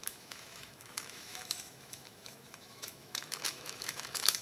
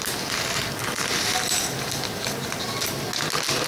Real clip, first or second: second